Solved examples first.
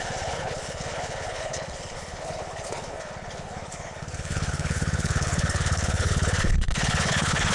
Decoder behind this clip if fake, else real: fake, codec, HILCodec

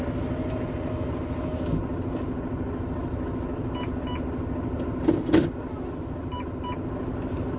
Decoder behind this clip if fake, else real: real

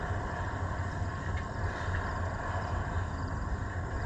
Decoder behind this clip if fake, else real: fake, vocoder, BigVGAN v2